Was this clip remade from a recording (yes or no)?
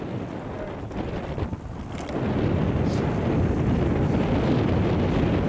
no